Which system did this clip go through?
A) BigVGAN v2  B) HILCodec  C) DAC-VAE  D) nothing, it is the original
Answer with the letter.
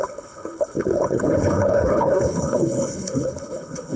B